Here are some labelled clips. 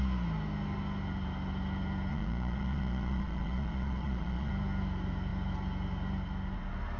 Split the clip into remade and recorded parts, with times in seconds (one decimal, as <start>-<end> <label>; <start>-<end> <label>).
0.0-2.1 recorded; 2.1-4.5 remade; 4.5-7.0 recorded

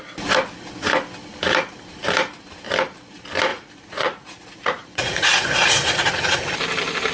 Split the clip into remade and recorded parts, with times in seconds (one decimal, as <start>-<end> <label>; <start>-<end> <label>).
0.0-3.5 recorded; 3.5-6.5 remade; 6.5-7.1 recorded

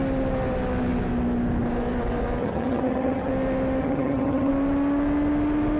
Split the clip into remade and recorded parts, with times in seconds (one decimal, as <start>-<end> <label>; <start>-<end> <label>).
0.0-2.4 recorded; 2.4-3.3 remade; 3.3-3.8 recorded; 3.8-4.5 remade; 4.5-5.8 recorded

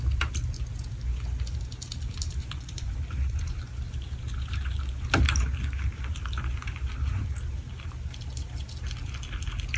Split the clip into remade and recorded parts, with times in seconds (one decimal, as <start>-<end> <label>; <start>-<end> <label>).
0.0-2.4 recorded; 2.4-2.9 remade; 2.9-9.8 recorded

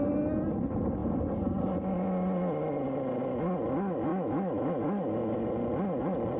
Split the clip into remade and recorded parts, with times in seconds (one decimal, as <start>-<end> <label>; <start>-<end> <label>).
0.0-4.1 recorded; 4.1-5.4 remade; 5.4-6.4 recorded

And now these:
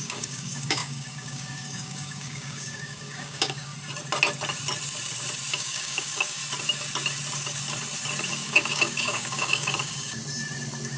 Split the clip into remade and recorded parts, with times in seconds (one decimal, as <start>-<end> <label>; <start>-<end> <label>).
0.0-3.7 remade; 3.7-5.5 recorded; 5.5-6.4 remade; 6.4-8.3 recorded; 8.3-10.2 remade; 10.2-11.0 recorded